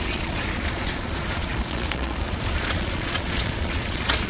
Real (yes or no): no